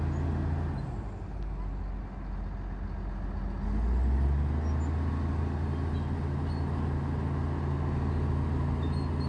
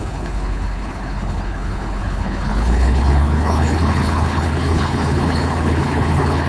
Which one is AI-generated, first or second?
second